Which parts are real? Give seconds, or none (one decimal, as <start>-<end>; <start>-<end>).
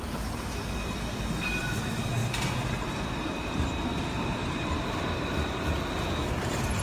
0.6-1.6